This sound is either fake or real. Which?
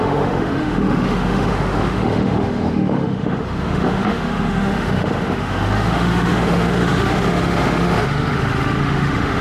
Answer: fake